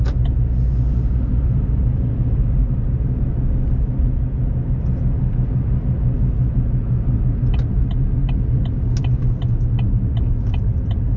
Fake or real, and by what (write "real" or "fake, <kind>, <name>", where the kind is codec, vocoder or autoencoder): real